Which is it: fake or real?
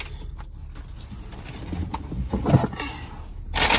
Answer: real